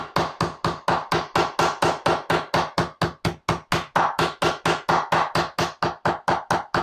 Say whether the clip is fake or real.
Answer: real